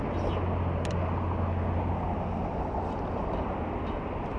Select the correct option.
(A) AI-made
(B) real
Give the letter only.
B